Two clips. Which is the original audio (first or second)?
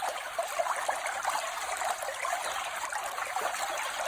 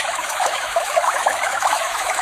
first